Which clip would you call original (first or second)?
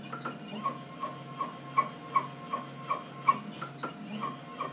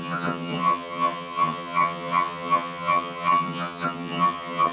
first